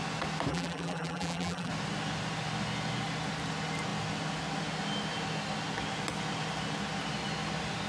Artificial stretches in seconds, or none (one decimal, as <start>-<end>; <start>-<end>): 0.5-1.7